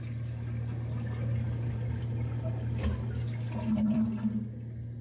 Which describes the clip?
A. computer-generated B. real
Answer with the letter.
B